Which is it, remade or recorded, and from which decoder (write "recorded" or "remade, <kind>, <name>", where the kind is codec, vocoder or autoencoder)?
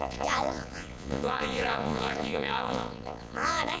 remade, vocoder, Vocos